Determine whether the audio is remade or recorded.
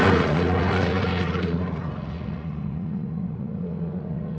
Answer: remade